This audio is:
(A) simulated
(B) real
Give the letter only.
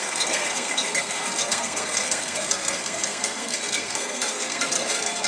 A